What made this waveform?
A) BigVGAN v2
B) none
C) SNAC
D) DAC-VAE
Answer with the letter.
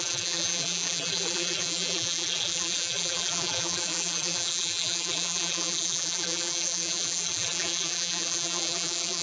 A